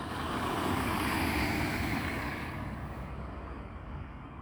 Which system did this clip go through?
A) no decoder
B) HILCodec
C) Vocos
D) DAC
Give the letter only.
D